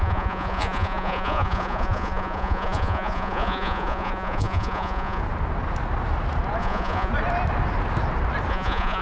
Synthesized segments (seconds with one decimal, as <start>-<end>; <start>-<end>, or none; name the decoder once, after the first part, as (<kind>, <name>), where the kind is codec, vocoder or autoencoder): 0.0-5.2 (vocoder, Vocos); 6.6-7.1; 8.5-9.0